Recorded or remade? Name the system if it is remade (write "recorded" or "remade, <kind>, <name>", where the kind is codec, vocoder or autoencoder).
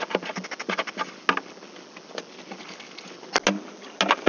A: recorded